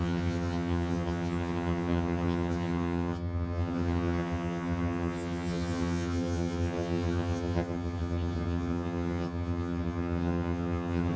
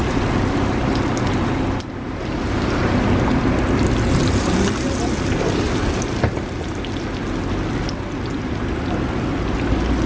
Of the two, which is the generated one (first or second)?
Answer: first